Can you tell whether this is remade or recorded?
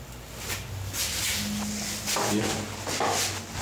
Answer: recorded